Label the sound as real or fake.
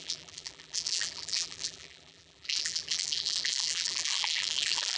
fake